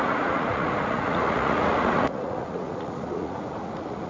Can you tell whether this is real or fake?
fake